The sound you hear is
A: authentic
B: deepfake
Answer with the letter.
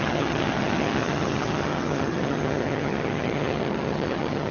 B